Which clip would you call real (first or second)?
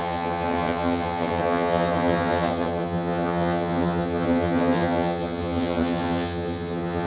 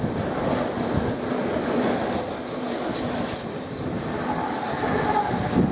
second